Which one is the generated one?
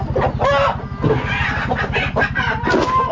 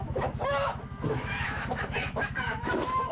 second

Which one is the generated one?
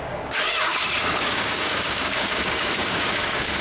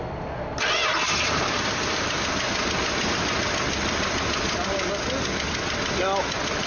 first